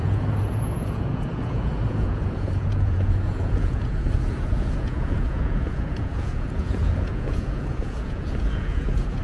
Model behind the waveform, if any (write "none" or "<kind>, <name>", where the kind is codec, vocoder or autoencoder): vocoder, Vocos